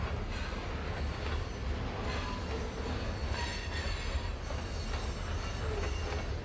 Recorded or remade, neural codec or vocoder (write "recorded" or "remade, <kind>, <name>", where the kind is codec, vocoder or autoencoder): recorded